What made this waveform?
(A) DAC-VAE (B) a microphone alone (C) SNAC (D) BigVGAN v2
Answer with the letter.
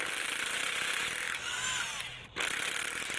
B